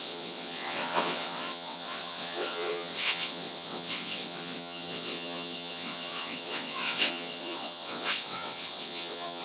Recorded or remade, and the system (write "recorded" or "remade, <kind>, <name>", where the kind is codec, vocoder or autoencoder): remade, vocoder, WaveNeXt